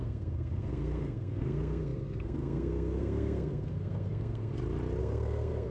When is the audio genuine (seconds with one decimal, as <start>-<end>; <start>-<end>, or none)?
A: 4.5-5.0